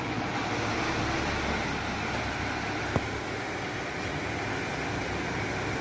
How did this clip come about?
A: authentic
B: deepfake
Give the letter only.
A